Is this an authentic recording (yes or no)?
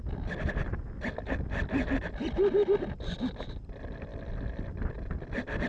yes